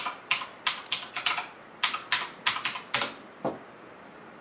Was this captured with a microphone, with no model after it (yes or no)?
yes